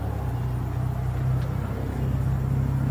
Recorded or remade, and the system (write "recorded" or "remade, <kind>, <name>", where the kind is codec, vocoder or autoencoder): recorded